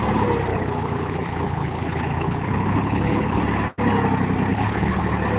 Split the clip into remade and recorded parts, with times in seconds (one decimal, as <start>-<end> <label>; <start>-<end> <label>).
0.0-0.5 recorded; 0.5-3.4 remade; 3.4-4.5 recorded; 4.5-5.0 remade; 5.0-5.4 recorded